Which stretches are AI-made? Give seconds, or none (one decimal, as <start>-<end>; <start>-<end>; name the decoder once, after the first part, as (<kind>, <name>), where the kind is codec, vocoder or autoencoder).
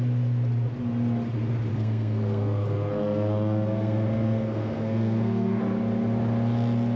1.7-5.6 (codec, SNAC)